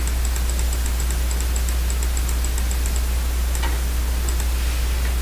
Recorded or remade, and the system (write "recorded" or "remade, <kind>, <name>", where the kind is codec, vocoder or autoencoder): recorded